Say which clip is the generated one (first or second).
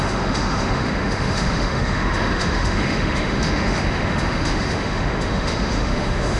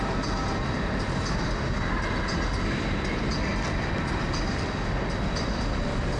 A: first